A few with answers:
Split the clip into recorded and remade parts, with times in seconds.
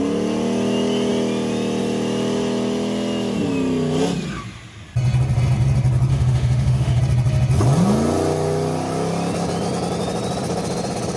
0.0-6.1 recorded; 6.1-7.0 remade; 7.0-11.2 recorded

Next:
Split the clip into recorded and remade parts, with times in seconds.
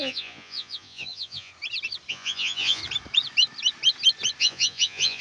0.0-1.5 remade; 1.5-2.1 recorded; 2.1-2.8 remade; 2.8-4.4 recorded; 4.4-5.2 remade